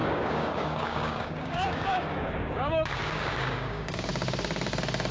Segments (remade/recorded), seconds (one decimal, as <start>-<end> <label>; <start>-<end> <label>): 0.0-4.1 remade; 4.1-5.1 recorded